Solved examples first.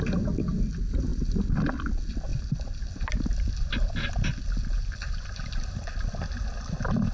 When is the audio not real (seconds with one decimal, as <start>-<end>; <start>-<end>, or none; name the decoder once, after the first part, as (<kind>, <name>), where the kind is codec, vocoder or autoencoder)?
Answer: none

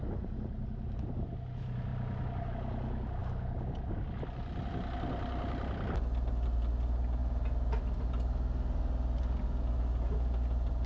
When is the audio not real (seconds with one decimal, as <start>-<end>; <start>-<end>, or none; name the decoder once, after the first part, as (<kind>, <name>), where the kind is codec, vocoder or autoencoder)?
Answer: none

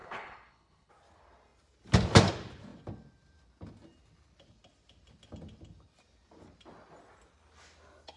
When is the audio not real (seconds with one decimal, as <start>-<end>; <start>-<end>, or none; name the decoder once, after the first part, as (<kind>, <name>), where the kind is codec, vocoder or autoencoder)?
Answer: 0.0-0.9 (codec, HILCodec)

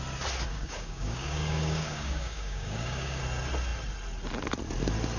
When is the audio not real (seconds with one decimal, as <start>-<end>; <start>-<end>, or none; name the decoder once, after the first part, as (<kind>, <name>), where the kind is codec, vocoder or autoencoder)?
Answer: 0.5-3.2 (codec, DAC)

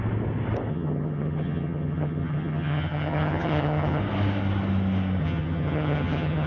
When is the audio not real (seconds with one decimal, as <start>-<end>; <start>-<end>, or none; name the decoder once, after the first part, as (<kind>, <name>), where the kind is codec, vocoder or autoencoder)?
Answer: 0.7-4.0 (vocoder, HiFi-GAN); 5.2-6.5

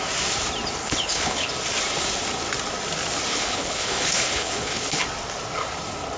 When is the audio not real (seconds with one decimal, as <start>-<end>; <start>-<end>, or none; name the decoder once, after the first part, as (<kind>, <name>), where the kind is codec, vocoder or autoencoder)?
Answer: 0.8-1.5 (codec, HILCodec); 3.3-5.0

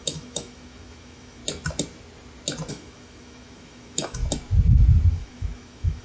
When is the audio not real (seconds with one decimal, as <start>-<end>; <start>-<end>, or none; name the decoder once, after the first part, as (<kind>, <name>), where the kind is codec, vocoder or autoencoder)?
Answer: 0.0-1.4 (autoencoder, DAC-VAE); 2.7-4.2; 5.1-6.0